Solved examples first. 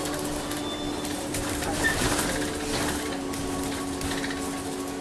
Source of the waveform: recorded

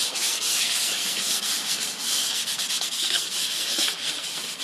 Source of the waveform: remade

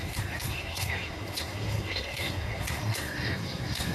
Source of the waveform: remade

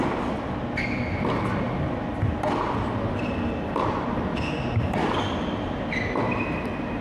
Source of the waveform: recorded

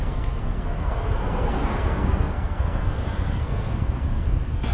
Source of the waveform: remade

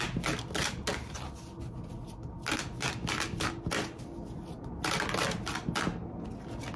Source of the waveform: recorded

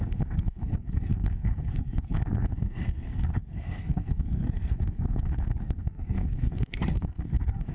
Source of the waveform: remade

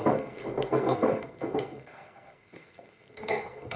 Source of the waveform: remade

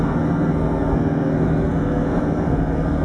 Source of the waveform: remade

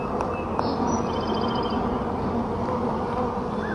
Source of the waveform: recorded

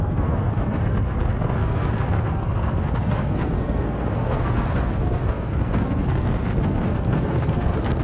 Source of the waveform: remade